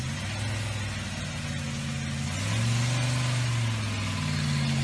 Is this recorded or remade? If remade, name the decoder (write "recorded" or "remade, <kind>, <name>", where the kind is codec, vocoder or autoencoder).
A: recorded